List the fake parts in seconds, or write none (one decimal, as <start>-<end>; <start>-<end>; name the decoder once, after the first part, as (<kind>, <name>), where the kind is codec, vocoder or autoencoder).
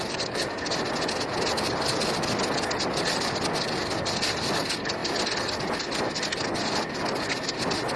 none